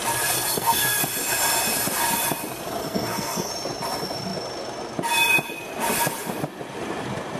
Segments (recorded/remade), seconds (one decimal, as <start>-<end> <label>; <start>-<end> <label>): 0.0-0.5 recorded; 0.5-1.0 remade; 1.0-2.8 recorded; 2.8-3.5 remade; 3.5-7.4 recorded